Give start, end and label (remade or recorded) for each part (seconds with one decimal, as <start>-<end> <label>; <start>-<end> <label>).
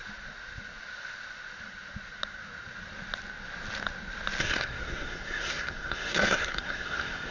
0.0-4.4 recorded; 4.4-7.3 remade